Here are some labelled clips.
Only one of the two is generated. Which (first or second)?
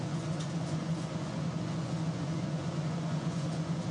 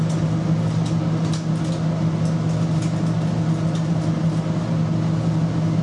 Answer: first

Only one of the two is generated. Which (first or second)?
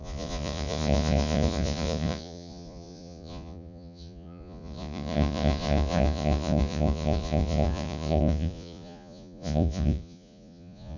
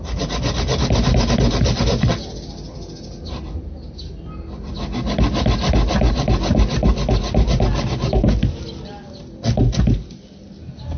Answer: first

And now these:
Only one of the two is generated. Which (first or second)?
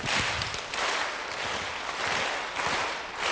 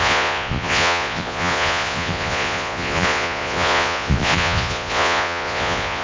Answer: second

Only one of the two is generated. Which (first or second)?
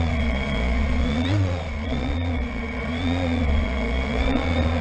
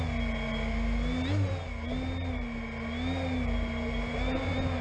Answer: first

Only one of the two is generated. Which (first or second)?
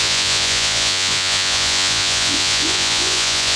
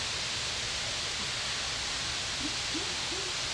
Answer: first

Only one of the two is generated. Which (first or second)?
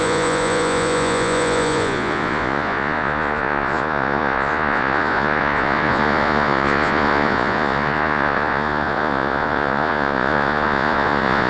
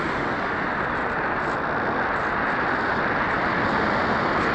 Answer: first